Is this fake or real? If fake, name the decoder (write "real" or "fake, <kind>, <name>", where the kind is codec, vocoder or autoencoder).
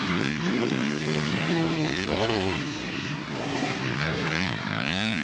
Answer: fake, codec, SNAC